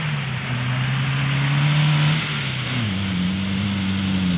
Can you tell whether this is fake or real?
real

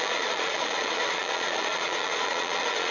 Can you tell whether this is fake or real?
fake